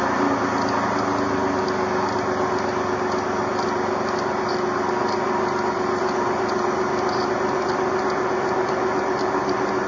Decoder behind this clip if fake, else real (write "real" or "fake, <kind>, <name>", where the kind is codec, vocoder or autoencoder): real